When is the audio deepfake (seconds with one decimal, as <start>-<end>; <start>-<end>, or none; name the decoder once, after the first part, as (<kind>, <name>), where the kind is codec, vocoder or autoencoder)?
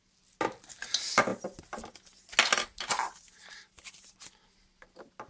none